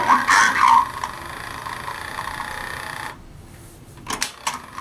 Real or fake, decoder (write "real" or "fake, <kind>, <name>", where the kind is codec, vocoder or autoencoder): fake, vocoder, BigVGAN v2